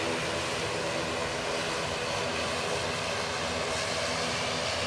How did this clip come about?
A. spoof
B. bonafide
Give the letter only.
B